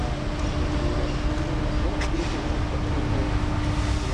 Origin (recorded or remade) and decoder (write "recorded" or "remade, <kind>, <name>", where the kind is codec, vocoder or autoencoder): recorded